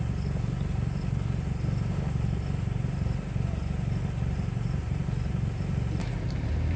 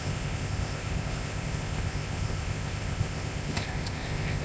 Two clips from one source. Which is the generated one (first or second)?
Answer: second